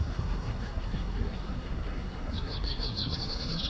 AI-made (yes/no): yes